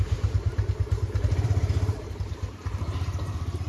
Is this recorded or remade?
remade